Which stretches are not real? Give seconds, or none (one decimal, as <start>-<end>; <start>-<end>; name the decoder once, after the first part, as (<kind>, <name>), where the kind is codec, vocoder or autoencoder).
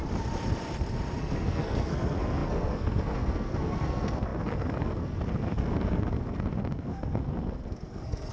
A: 1.2-8.3 (codec, SNAC)